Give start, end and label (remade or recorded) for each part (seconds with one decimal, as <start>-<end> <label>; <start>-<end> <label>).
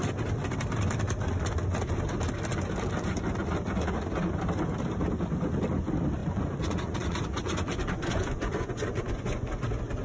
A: 0.0-6.2 recorded; 6.2-9.6 remade; 9.6-10.0 recorded